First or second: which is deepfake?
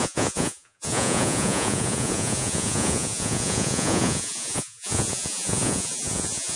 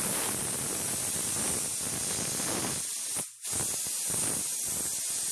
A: first